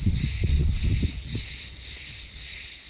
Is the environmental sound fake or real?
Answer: fake